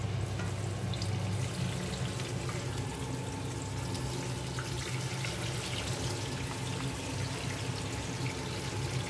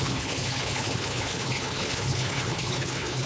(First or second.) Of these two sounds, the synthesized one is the second